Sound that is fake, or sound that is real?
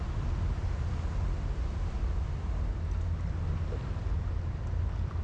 real